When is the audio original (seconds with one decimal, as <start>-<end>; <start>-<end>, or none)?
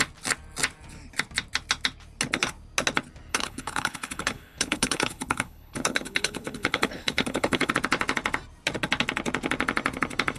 0.0-3.3; 7.7-10.4